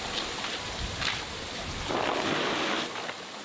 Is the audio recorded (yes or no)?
yes